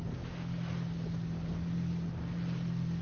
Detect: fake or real real